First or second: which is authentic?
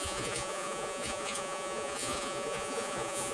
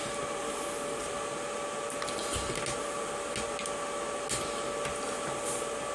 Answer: second